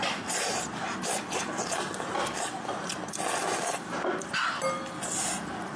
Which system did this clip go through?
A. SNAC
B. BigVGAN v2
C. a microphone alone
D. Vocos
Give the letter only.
C